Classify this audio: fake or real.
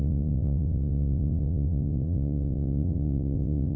fake